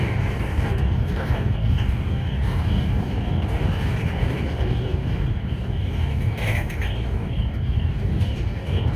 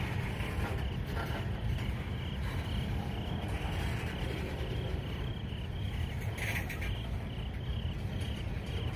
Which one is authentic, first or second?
second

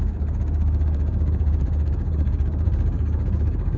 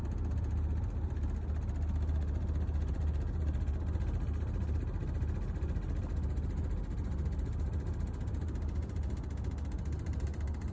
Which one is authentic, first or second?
second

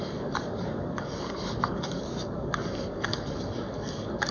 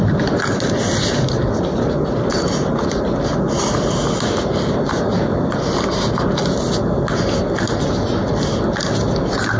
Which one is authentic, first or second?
second